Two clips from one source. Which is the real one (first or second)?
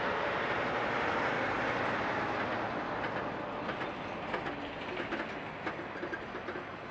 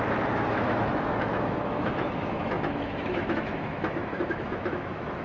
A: first